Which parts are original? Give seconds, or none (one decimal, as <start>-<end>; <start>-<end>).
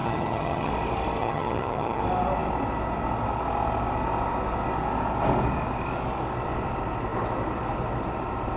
0.7-1.2; 2.0-8.6